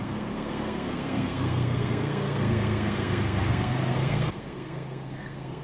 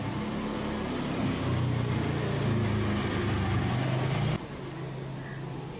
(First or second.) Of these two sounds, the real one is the second